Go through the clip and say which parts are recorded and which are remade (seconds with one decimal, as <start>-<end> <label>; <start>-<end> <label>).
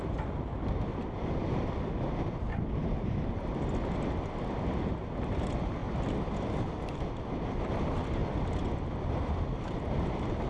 0.0-10.5 recorded